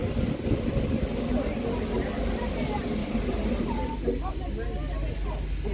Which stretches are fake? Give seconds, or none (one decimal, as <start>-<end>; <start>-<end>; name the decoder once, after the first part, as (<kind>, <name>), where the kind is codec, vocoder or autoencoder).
3.0-4.3 (vocoder, BigVGAN v2)